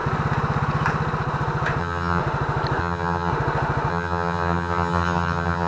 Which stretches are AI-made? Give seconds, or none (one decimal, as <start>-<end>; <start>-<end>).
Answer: 1.8-2.2; 2.8-3.3; 3.9-5.7

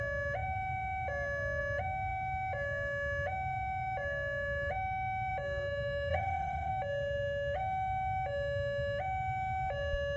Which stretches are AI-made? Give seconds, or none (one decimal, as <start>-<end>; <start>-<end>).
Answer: 6.1-6.7